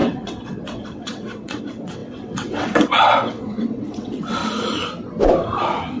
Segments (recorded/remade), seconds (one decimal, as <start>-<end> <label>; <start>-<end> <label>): 0.0-4.4 remade; 4.4-6.0 recorded